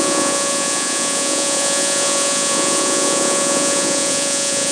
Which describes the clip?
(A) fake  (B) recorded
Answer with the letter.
A